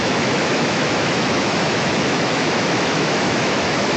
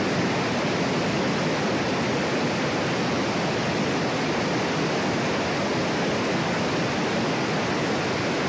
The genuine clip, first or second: second